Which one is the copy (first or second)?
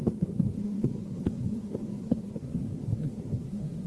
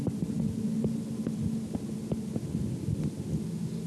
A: first